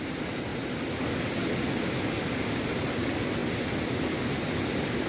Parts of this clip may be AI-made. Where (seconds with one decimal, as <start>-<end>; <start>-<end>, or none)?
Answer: none